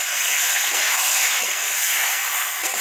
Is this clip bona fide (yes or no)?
no